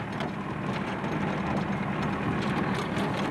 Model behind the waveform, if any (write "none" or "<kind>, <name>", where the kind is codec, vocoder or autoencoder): none